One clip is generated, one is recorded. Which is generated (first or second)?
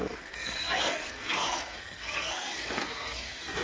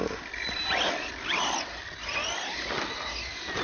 first